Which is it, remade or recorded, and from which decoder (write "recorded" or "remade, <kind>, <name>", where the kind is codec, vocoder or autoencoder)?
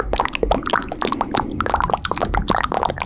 recorded